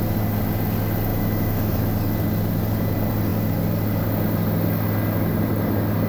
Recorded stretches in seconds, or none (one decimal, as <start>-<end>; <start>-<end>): 0.0-1.1; 1.8-6.1